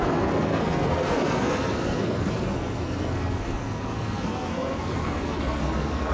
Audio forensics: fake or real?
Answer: fake